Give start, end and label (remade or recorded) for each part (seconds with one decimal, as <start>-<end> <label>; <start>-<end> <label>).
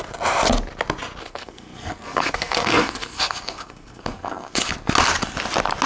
0.0-1.2 recorded; 1.2-4.7 remade; 4.7-5.9 recorded